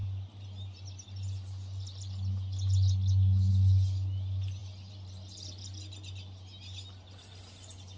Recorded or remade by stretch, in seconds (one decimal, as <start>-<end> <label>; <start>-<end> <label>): 0.0-8.0 recorded